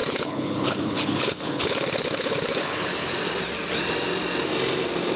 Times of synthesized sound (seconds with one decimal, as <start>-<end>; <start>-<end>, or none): 0.0-3.1